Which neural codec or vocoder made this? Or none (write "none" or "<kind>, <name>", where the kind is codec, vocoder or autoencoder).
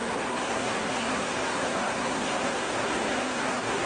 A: codec, SNAC